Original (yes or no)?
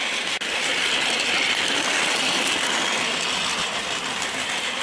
yes